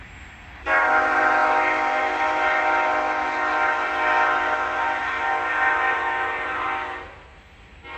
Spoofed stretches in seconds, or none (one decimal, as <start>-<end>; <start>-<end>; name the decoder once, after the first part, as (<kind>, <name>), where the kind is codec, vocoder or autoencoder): none